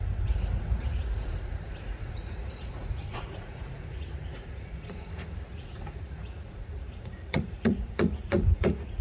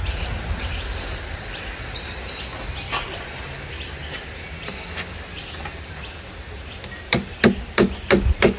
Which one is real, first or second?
second